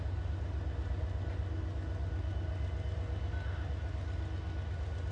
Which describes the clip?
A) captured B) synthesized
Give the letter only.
A